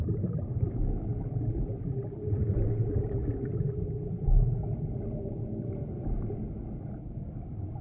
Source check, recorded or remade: recorded